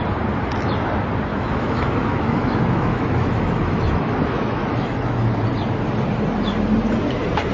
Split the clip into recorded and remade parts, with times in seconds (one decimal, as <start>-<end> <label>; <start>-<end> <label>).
0.0-1.3 recorded; 1.3-5.3 remade; 5.3-7.5 recorded